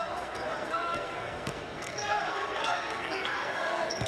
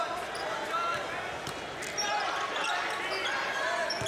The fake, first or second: first